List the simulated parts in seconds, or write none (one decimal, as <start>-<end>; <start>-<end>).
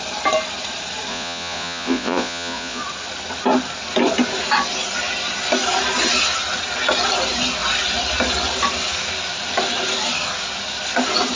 1.1-2.8